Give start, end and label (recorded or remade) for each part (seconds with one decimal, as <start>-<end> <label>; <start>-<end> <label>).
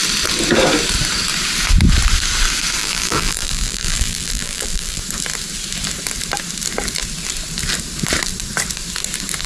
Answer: 0.0-2.8 recorded; 2.8-5.0 remade; 5.0-9.5 recorded